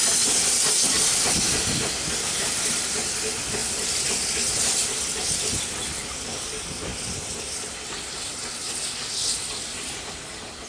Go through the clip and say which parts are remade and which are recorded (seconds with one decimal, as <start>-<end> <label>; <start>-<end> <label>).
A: 0.0-10.7 recorded